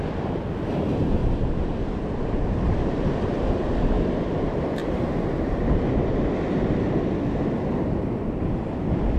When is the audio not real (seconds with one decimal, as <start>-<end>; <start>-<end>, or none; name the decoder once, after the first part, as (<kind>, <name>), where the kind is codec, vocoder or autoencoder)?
1.2-3.5 (vocoder, BigVGAN v2); 4.8-6.0